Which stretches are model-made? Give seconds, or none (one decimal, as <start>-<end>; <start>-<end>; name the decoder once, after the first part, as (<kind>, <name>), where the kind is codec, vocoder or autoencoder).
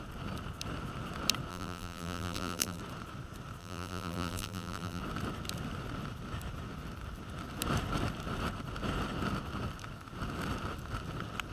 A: 1.5-2.8 (vocoder, BigVGAN v2); 3.6-5.0